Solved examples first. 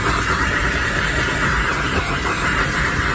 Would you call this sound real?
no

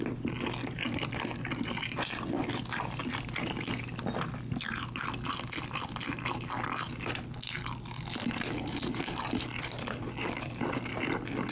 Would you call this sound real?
yes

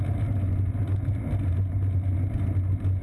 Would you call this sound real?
yes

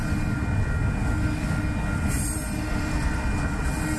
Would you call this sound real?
yes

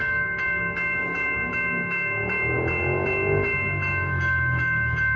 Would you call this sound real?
no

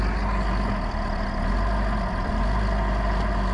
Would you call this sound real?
yes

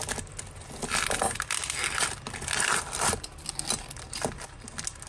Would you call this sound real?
yes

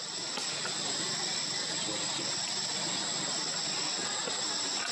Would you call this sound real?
yes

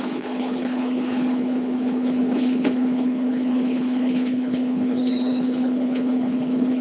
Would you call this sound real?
no